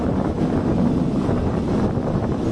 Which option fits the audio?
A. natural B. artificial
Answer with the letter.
A